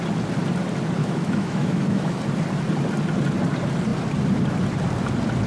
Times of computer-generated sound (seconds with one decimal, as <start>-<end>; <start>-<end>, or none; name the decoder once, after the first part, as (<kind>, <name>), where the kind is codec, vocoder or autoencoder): 1.0-2.2 (autoencoder, DAC-VAE)